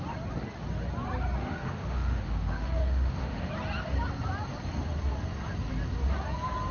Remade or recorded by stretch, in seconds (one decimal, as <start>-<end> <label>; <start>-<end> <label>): 0.0-1.4 recorded; 1.4-3.5 remade; 3.5-6.7 recorded